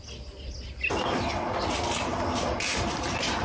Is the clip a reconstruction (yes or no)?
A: no